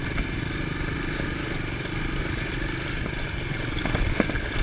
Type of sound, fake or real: real